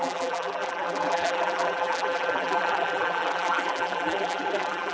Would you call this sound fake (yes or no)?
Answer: yes